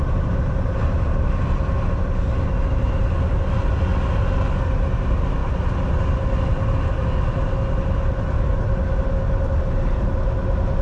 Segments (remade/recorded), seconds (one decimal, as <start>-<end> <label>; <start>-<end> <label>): 0.0-10.8 recorded